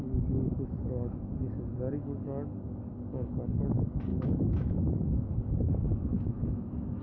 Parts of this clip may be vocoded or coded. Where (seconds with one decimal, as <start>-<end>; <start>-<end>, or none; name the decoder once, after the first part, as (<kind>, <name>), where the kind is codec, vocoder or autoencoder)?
4.1-5.3 (autoencoder, DAC-VAE); 5.9-7.0